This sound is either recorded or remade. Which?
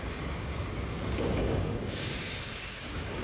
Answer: remade